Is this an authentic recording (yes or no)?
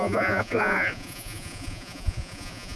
no